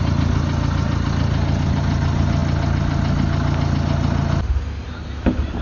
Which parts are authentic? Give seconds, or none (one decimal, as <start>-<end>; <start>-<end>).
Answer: 0.0-5.6